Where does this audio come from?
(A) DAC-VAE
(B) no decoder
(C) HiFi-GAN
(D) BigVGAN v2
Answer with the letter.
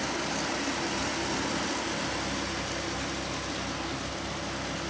B